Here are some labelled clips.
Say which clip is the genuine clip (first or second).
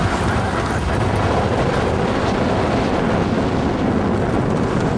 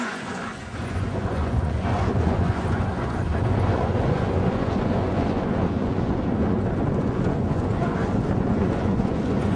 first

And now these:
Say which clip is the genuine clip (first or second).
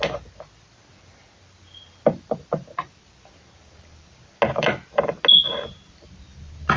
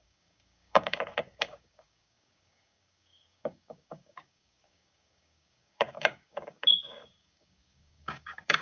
first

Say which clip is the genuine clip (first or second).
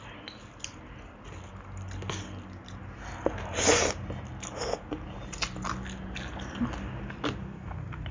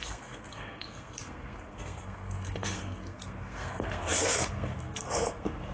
first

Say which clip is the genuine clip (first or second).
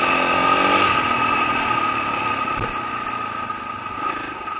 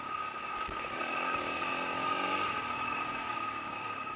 first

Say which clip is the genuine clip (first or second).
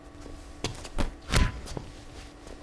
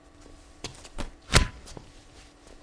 first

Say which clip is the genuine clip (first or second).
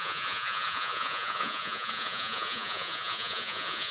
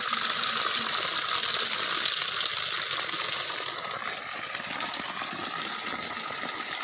second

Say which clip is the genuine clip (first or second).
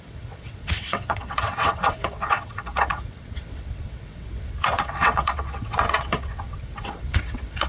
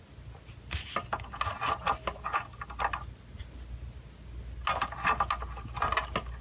second